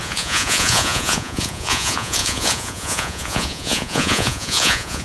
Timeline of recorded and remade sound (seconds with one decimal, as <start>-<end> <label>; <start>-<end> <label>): 0.0-5.0 remade